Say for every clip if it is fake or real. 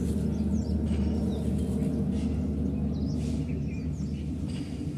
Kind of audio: real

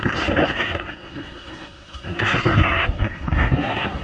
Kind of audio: fake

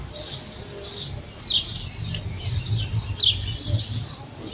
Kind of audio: real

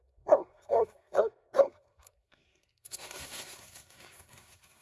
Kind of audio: fake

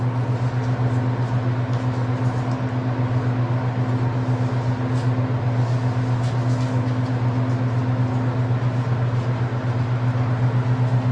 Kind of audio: real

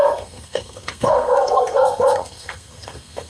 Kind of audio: fake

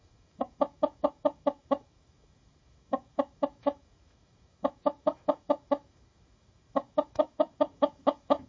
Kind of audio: fake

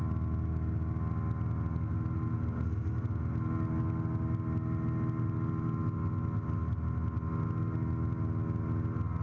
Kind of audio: real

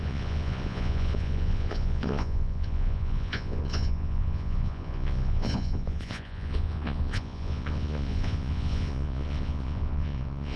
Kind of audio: fake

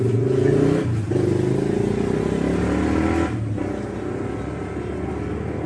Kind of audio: real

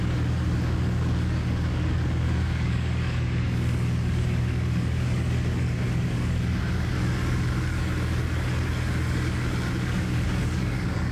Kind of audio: fake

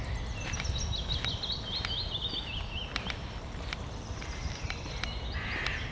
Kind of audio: real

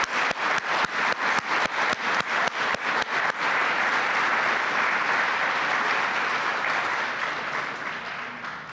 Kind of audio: real